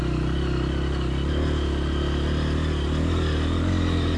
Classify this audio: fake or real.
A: real